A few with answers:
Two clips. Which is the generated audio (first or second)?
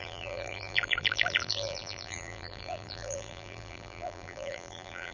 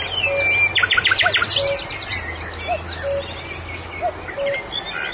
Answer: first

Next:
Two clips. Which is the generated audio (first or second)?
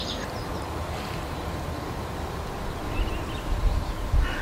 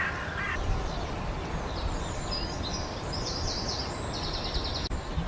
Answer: first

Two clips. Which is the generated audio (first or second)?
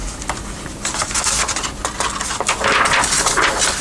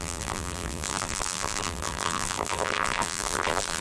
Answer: second